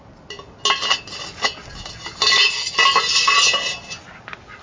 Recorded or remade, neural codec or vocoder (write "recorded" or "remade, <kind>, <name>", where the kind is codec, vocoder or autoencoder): recorded